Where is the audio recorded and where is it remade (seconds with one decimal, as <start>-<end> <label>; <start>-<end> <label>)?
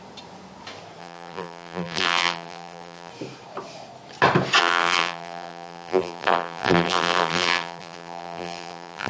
0.0-1.0 recorded; 1.0-3.1 remade; 3.1-4.6 recorded; 4.6-9.1 remade